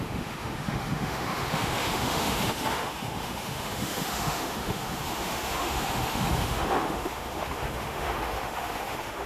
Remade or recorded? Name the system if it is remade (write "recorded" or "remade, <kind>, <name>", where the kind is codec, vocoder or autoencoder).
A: remade, autoencoder, DAC-VAE